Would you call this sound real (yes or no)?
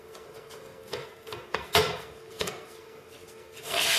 no